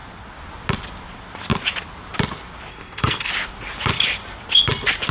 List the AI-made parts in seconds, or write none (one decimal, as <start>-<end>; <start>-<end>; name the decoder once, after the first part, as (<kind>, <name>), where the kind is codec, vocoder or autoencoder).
2.7-3.3 (codec, SNAC)